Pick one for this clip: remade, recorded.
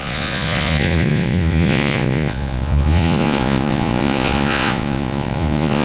remade